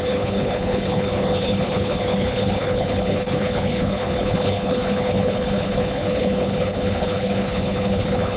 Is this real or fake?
fake